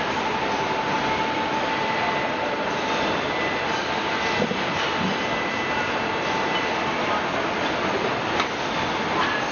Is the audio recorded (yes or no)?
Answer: yes